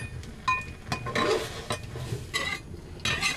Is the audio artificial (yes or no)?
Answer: no